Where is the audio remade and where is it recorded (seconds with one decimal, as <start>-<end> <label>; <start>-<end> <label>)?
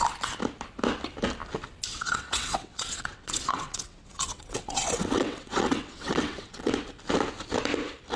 0.0-1.9 recorded; 1.9-6.7 remade; 6.7-8.2 recorded